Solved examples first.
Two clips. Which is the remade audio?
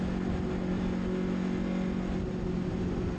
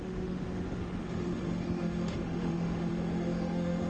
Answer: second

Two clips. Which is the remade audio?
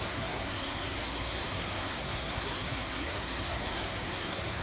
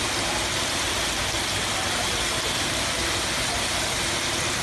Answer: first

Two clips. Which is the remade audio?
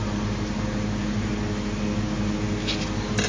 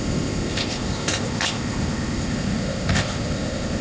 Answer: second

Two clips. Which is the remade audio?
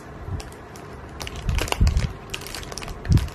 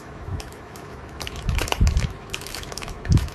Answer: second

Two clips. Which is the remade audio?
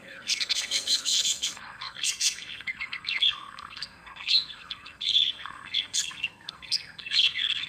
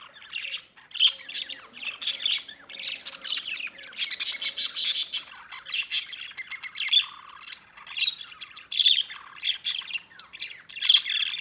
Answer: first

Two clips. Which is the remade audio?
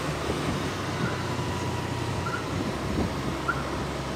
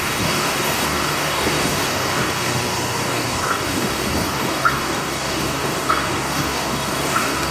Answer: second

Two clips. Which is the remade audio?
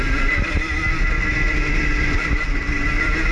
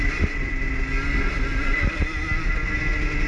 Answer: first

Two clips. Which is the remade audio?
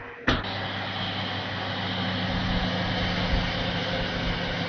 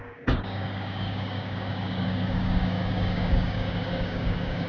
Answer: second